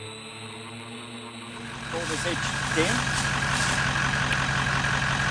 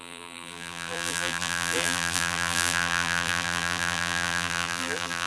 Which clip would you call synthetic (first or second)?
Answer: second